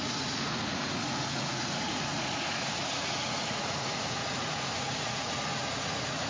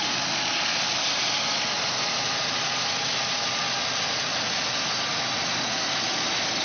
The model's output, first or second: first